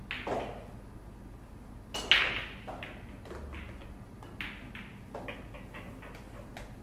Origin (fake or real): real